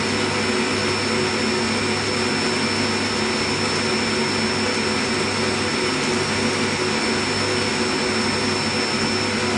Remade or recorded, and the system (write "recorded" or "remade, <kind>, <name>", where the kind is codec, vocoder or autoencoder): recorded